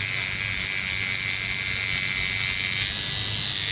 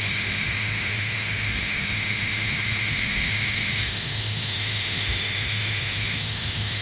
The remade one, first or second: second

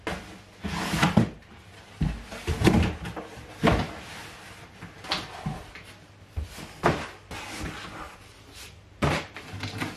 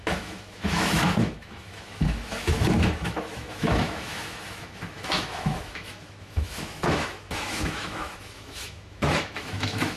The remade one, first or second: second